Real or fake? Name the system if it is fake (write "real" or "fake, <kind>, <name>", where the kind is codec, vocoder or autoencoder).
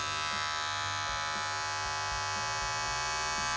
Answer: real